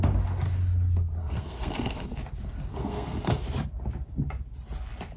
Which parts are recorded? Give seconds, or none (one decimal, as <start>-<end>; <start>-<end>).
0.0-1.2; 2.2-2.7; 3.4-5.2